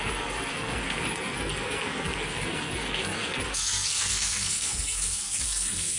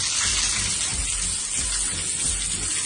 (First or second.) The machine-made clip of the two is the first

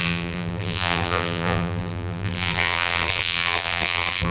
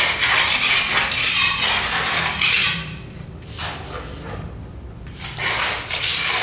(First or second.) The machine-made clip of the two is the first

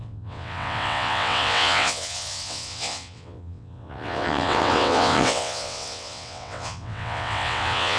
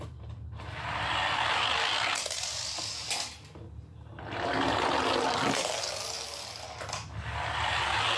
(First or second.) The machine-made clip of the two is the first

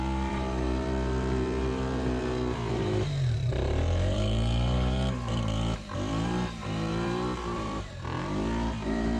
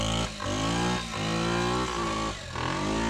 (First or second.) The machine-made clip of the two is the first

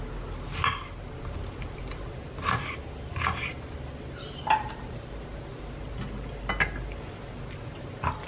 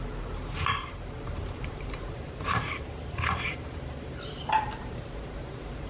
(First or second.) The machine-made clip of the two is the second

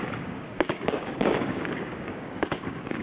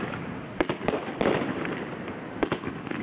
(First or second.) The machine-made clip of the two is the first